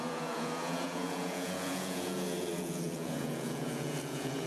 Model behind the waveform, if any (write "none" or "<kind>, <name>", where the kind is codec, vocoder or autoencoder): vocoder, Vocos